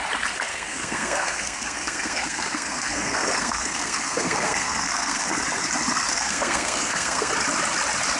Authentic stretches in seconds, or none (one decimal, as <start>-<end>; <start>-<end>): 0.0-0.5; 5.4-6.1; 7.3-8.2